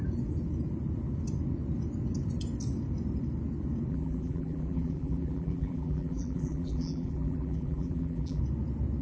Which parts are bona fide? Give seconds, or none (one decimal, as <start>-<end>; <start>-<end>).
0.0-3.9; 8.4-9.0